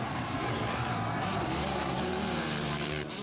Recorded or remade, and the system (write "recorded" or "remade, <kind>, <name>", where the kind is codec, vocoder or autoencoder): remade, vocoder, BigVGAN v2